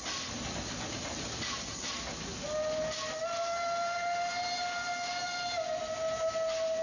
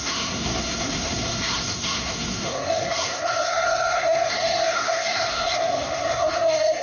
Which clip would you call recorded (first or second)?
first